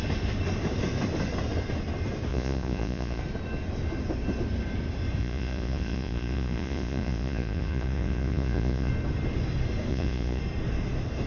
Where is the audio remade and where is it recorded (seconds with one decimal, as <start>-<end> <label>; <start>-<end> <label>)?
0.0-2.3 recorded; 2.3-3.2 remade; 3.2-5.2 recorded; 5.2-8.9 remade; 8.9-9.9 recorded; 9.9-10.4 remade; 10.4-11.3 recorded